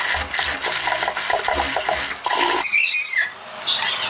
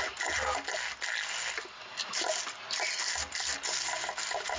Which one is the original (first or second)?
second